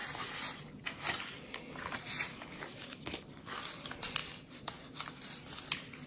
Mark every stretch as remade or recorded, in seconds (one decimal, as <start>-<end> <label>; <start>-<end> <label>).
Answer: 0.0-2.3 recorded; 2.3-3.6 remade; 3.6-6.1 recorded